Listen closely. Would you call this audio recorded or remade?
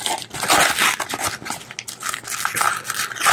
recorded